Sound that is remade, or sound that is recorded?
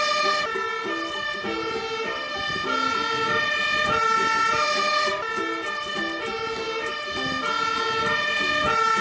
recorded